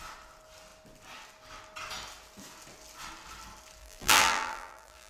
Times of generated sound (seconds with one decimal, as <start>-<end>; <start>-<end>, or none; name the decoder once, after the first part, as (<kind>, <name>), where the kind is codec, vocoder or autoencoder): 3.8-5.1 (vocoder, BigVGAN v2)